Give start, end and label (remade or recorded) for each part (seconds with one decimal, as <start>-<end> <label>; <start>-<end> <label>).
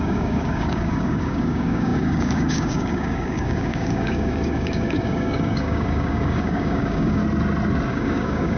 0.0-7.2 remade; 7.2-7.9 recorded; 7.9-8.6 remade